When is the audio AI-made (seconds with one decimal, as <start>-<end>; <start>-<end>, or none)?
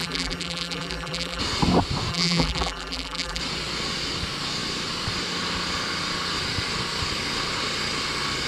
0.0-1.4; 2.1-3.4